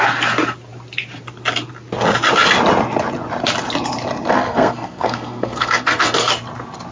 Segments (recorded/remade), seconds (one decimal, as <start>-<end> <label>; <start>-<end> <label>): 0.0-4.3 recorded; 4.3-6.3 remade; 6.3-6.9 recorded